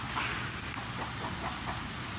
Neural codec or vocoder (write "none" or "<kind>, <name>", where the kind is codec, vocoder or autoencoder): none